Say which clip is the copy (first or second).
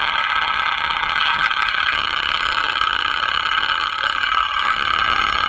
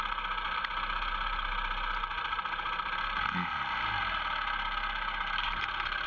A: first